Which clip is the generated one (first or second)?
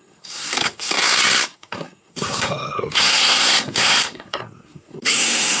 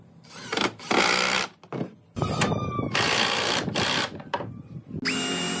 first